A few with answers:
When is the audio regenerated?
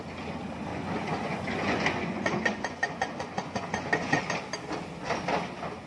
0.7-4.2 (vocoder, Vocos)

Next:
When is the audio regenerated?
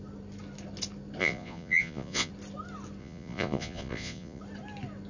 1.2-2.3 (vocoder, Vocos); 3.0-4.4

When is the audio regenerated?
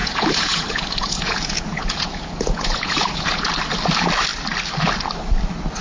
0.0-3.5 (vocoder, Vocos)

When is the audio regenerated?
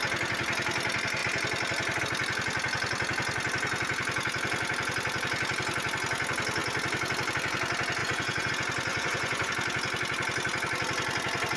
8.0-8.5 (vocoder, Vocos); 8.9-9.5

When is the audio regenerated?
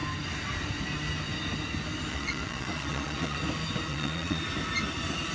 2.1-3.4 (vocoder, Vocos); 3.9-4.4